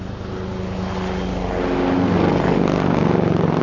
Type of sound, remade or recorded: recorded